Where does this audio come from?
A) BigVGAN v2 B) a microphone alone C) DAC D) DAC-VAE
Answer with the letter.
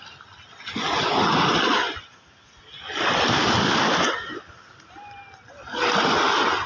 B